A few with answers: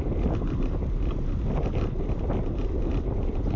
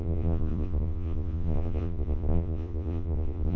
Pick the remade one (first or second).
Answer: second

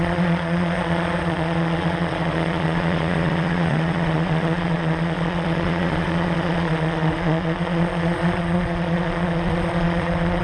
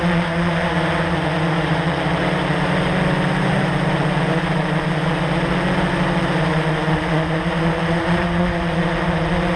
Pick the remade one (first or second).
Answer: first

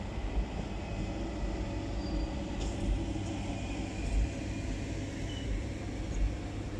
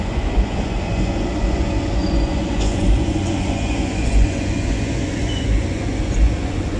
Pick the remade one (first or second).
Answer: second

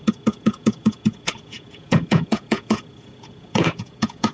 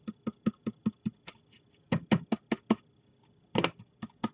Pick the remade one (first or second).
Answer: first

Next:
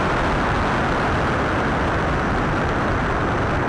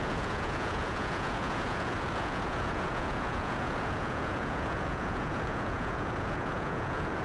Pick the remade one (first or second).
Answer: second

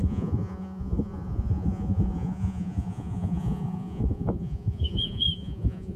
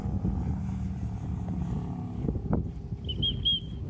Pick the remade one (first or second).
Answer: first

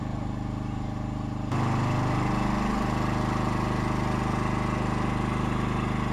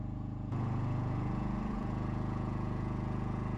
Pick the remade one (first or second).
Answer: second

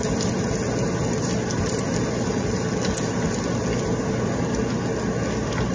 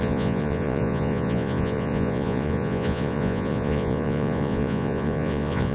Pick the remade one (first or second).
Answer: second